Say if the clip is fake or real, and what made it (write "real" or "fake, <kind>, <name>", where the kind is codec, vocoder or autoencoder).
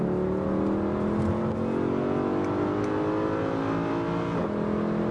real